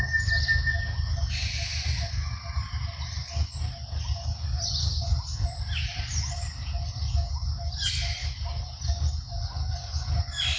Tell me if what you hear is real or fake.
real